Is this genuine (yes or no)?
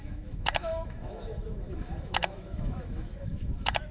no